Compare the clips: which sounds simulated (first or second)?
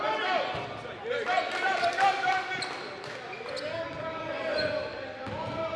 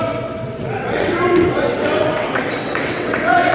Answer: second